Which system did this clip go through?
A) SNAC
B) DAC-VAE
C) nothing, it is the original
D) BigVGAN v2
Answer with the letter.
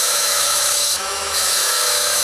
B